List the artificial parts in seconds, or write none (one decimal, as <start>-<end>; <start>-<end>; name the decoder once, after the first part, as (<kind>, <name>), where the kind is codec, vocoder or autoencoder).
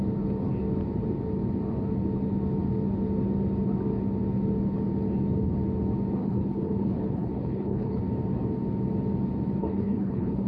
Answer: 6.2-8.0 (codec, HILCodec); 9.6-10.5